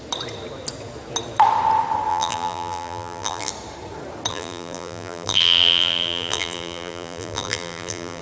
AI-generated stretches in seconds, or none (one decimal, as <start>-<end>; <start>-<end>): 2.1-3.5; 4.3-8.2